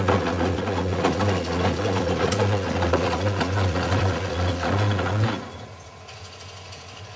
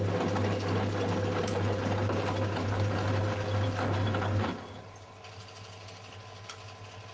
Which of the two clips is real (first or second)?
second